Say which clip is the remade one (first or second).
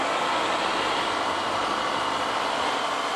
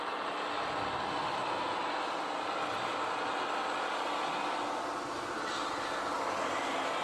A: first